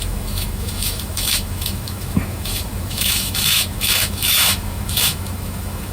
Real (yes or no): no